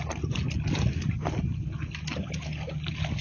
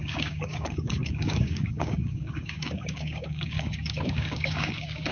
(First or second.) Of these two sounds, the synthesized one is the second